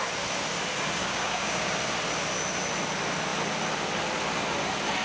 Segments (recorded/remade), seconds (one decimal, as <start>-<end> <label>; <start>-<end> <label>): 0.0-1.0 recorded; 1.0-1.7 remade; 1.7-5.0 recorded